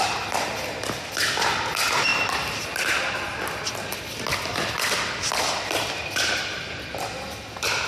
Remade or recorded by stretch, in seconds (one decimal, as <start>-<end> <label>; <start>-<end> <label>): 0.0-7.9 recorded